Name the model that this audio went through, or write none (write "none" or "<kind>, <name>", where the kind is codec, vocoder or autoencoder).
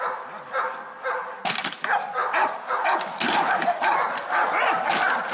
none